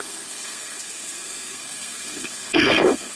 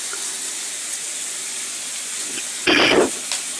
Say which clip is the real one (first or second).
second